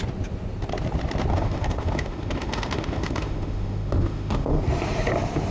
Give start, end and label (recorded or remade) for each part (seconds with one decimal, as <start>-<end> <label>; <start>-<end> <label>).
0.0-1.3 recorded; 1.3-4.6 remade; 4.6-5.5 recorded